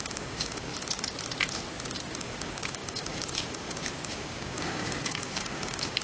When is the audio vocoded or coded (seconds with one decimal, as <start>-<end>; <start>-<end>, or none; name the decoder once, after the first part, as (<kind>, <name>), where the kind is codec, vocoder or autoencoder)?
0.0-0.7 (codec, DAC); 2.1-6.0